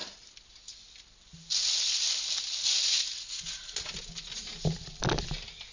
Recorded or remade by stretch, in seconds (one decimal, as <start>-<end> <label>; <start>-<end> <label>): 0.0-5.7 recorded